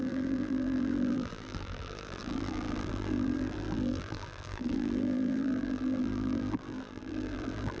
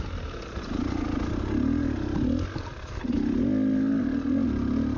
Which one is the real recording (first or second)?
second